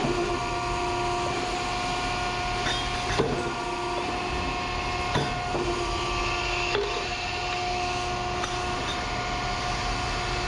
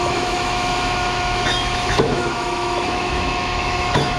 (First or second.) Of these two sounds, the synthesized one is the second